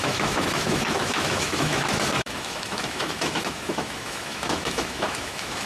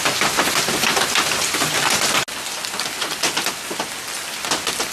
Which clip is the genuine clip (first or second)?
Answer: second